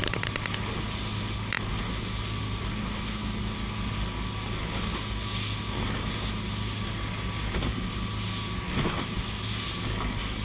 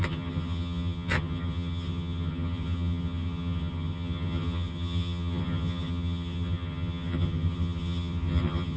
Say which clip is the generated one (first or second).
second